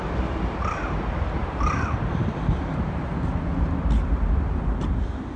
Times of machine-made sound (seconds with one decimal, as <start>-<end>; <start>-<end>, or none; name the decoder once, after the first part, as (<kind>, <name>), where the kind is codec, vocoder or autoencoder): none